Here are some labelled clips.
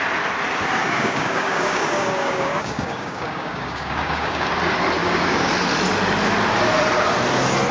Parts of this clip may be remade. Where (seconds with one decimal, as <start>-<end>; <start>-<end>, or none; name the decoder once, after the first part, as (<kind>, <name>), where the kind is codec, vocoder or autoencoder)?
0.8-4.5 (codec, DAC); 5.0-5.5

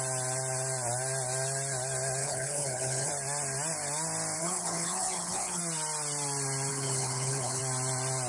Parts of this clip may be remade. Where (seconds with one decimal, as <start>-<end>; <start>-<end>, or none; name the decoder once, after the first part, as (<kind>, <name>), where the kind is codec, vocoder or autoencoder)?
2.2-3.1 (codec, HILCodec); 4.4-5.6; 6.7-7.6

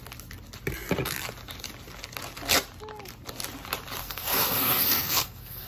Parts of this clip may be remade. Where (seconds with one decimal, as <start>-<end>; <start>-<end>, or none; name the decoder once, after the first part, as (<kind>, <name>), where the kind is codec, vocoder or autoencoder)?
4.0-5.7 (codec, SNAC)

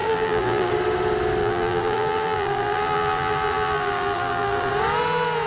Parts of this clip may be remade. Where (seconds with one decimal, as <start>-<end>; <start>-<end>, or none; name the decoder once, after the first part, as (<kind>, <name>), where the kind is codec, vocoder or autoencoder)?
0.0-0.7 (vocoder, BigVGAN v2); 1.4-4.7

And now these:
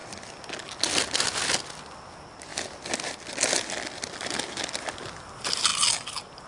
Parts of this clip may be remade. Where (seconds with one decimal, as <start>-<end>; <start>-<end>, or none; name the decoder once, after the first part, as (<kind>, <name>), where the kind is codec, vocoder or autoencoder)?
none

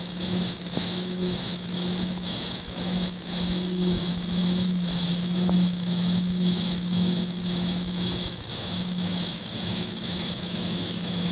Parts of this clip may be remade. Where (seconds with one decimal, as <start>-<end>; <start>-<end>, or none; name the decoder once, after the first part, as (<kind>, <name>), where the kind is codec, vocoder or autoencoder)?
0.0-11.3 (autoencoder, DAC-VAE)

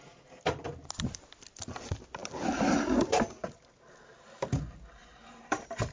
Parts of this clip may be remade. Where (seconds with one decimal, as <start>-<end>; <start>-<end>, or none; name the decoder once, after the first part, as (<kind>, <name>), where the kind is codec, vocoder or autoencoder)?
5.0-5.9 (vocoder, BigVGAN v2)

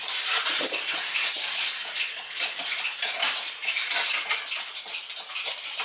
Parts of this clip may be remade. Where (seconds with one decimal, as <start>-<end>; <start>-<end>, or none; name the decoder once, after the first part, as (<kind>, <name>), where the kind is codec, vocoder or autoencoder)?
none